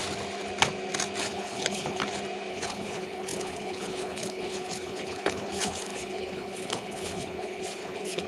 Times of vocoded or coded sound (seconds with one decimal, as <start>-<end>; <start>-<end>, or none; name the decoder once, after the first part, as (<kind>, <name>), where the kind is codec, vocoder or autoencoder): 1.2-2.0 (codec, HILCodec); 2.5-8.3